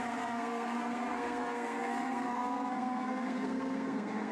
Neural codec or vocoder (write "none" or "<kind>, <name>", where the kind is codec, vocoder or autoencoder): codec, SNAC